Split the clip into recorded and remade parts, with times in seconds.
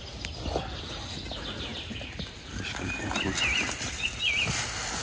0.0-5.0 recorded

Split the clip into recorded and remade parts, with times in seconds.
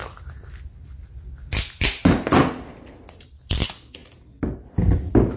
0.0-5.4 recorded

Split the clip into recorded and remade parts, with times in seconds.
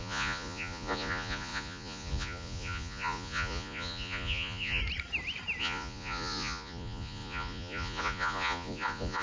0.0-4.8 remade; 4.8-5.6 recorded; 5.6-9.2 remade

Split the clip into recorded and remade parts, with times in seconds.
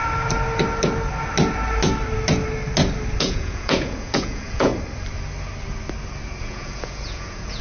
0.0-3.2 recorded; 3.2-4.7 remade; 4.7-6.4 recorded; 6.4-7.6 remade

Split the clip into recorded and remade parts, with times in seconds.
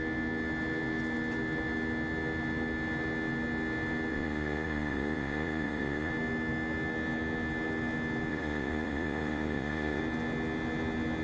0.0-4.1 recorded; 4.1-6.1 remade; 6.1-8.3 recorded; 8.3-10.0 remade; 10.0-11.2 recorded